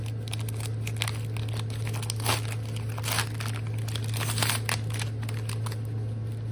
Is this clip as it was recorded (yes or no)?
yes